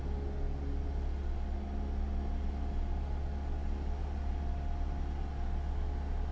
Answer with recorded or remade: recorded